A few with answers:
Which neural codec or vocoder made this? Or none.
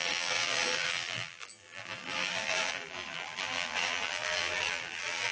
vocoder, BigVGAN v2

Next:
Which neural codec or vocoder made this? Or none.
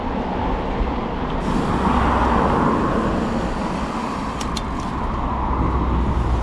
none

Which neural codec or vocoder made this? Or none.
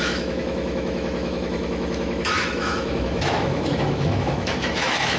autoencoder, DAC-VAE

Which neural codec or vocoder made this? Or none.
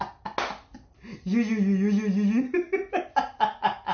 none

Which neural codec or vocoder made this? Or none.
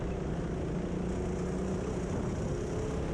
none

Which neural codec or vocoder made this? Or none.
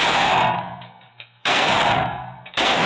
codec, SNAC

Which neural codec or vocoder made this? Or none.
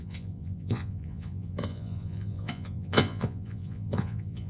vocoder, Vocos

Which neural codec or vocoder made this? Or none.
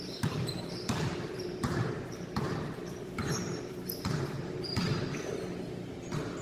vocoder, BigVGAN v2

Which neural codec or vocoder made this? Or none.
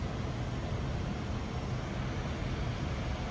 none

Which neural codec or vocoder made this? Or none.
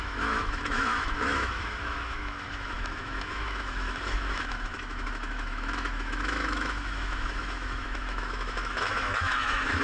autoencoder, DAC-VAE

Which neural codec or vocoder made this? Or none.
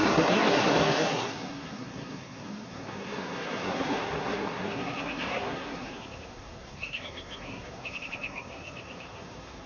codec, SNAC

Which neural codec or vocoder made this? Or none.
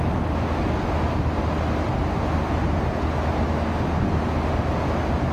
none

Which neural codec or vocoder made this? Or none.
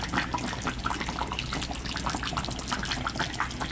none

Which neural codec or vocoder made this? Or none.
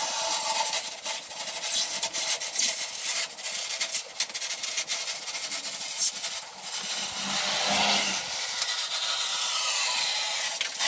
none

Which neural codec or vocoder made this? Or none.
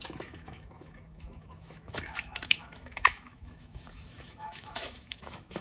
autoencoder, DAC-VAE